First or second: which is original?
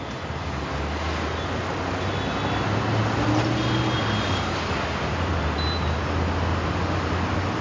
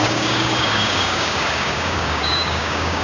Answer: first